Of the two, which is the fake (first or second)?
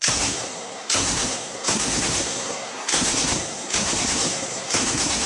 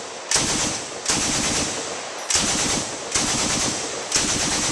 first